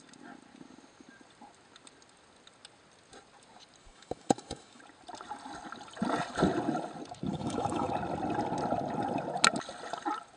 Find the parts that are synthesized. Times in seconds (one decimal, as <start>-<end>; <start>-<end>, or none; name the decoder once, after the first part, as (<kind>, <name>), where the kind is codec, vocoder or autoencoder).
3.8-4.8 (autoencoder, DAC-VAE); 7.3-7.9